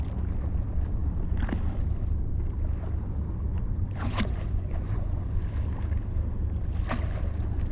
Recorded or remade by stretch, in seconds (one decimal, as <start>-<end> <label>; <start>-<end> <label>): 0.0-3.5 recorded; 3.5-5.4 remade; 5.4-7.7 recorded